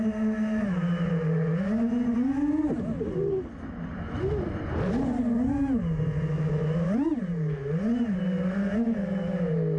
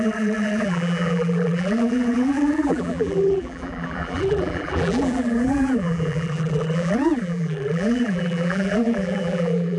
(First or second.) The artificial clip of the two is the second